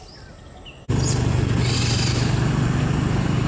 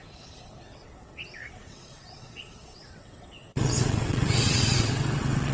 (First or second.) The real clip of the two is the first